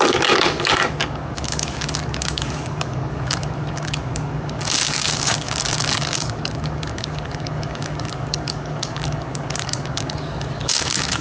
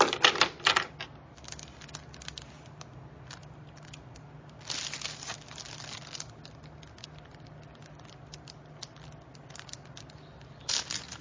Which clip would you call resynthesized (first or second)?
first